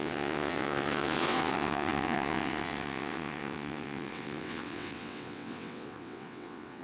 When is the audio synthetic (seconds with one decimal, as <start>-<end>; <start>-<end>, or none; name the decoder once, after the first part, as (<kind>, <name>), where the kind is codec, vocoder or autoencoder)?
0.0-6.8 (vocoder, WaveNeXt)